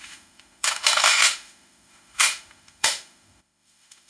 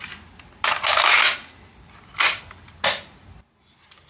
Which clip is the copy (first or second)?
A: first